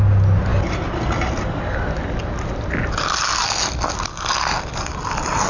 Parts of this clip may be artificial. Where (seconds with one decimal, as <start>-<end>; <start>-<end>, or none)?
none

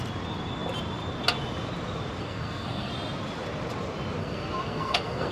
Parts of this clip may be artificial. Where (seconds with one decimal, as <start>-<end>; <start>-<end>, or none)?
2.2-2.9; 4.2-5.3